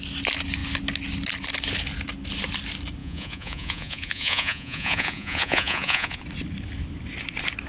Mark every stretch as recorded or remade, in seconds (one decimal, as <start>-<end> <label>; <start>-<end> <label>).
0.0-3.0 recorded; 3.0-6.2 remade; 6.2-7.7 recorded